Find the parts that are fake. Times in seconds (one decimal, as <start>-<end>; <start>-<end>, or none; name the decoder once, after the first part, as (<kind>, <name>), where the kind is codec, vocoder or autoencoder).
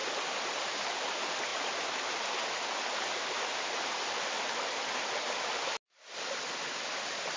none